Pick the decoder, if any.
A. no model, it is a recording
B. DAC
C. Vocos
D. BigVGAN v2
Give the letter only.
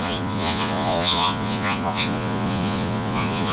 C